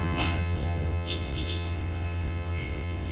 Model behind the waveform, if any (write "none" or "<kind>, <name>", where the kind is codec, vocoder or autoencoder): vocoder, WaveNeXt